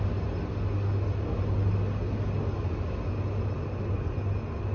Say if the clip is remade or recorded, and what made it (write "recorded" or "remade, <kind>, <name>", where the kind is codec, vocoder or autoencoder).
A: recorded